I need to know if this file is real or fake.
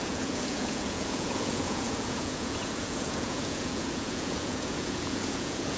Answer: fake